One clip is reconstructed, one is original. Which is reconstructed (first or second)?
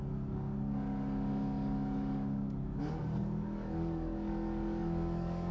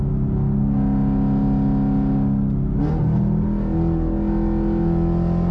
first